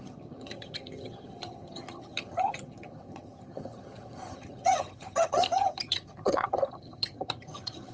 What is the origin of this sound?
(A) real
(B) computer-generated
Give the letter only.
B